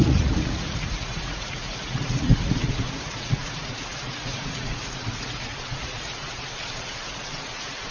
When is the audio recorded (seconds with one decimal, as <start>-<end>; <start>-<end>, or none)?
none